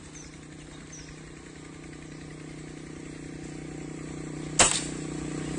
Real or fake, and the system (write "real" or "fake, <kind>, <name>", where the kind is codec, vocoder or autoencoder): real